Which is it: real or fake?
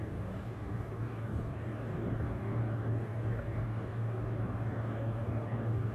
fake